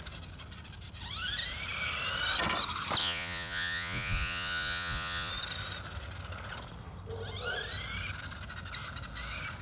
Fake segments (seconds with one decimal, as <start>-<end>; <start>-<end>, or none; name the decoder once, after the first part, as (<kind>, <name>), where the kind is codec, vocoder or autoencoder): 3.0-5.3 (vocoder, Vocos)